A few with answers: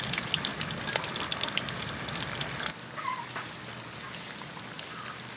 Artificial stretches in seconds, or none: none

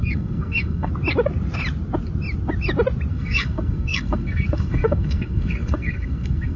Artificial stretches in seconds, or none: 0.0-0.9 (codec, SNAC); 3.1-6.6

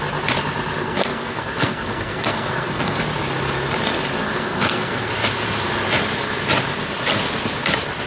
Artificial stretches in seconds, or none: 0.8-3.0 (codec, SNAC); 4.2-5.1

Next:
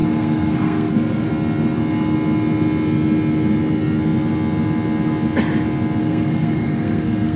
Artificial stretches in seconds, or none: 0.0-1.3 (codec, SNAC); 6.0-7.4